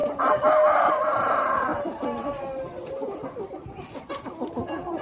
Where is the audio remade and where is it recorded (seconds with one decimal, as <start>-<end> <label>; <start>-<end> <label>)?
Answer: 0.0-5.0 recorded

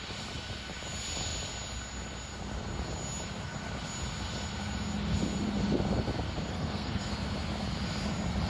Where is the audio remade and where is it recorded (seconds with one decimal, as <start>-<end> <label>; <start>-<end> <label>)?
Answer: 0.0-6.5 recorded; 6.5-7.1 remade; 7.1-8.5 recorded

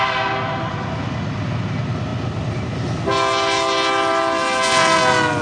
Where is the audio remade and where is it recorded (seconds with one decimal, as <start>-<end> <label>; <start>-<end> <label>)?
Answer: 0.0-5.4 recorded

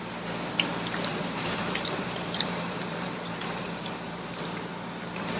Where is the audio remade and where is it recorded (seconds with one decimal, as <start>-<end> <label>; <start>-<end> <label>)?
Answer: 0.0-1.1 recorded; 1.1-4.3 remade; 4.3-5.4 recorded

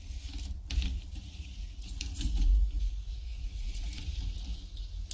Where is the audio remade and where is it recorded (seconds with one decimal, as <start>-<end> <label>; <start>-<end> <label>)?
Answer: 0.0-1.1 recorded; 1.1-4.2 remade; 4.2-5.1 recorded